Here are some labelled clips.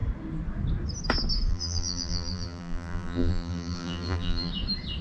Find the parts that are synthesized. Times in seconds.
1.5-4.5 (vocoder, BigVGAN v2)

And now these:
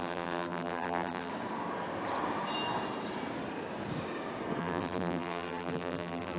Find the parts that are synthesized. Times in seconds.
0.0-1.3 (vocoder, BigVGAN v2); 4.6-6.4

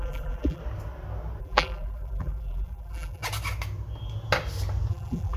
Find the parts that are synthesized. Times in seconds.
0.0-0.6 (vocoder, BigVGAN v2); 1.4-3.2; 4.9-5.4

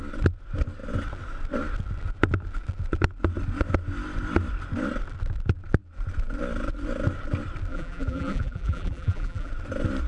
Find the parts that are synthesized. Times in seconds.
7.7-9.5 (vocoder, BigVGAN v2)

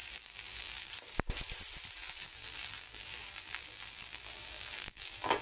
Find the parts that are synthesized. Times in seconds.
0.0-0.9 (vocoder, BigVGAN v2); 2.0-5.4

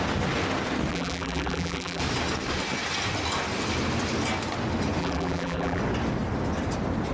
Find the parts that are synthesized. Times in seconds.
0.9-2.0 (vocoder, BigVGAN v2); 5.0-5.8